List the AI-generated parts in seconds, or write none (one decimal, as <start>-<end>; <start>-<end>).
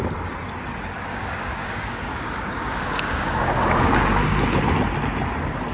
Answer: 1.1-4.2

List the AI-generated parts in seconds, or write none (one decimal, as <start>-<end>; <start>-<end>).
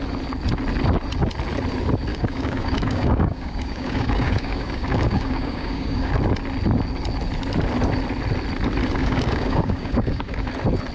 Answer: 2.1-6.1; 9.0-10.5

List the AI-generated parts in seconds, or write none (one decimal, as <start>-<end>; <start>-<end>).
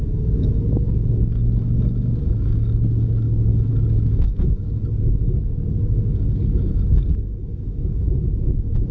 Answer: 0.0-8.9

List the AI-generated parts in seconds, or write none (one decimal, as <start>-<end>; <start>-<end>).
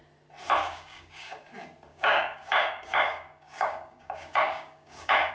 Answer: 0.6-1.5; 1.9-5.3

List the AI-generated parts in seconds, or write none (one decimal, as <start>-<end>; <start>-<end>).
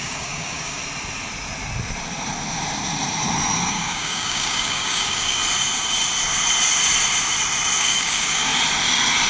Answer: 0.0-0.8; 3.7-5.4; 7.8-8.5